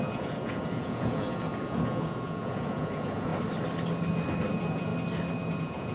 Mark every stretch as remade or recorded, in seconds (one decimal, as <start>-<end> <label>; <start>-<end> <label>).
0.0-3.3 remade; 3.3-4.5 recorded; 4.5-4.9 remade; 4.9-5.4 recorded; 5.4-5.9 remade

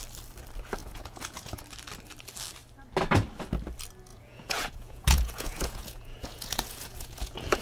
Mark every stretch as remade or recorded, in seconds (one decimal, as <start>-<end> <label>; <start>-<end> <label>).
0.0-0.8 recorded; 0.8-1.6 remade; 1.6-4.1 recorded; 4.1-7.6 remade